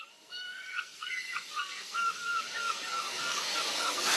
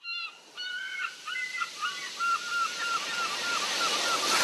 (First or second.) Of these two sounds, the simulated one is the first